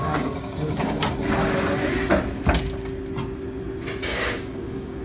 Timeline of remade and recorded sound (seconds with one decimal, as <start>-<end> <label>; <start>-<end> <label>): 0.0-1.0 remade; 1.0-4.0 recorded; 4.0-5.0 remade